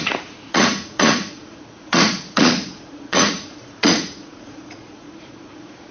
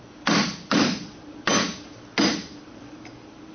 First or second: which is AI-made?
first